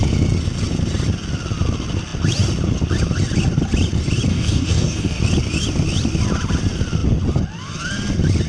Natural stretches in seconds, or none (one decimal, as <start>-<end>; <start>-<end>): 0.0-4.3; 5.2-8.5